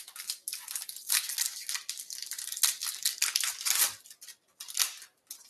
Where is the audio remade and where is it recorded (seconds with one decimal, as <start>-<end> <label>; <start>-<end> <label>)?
0.0-5.5 recorded